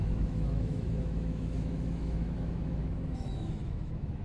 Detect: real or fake fake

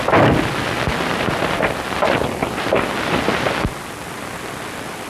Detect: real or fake real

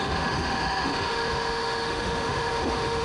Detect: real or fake fake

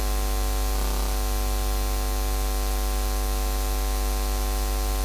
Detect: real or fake real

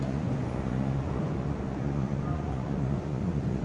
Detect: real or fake fake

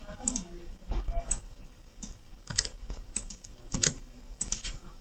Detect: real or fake fake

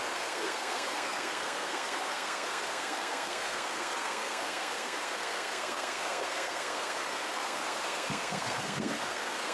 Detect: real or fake fake